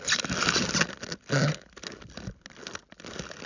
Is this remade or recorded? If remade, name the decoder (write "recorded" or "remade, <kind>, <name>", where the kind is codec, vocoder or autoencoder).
recorded